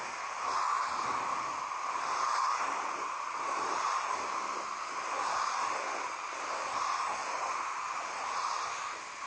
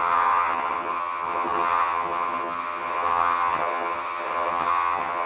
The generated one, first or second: second